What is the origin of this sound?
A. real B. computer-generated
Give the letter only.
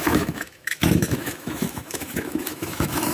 B